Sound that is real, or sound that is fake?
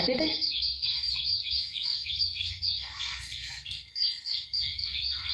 fake